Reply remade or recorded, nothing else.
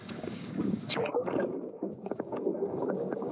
remade